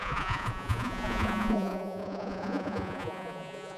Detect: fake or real fake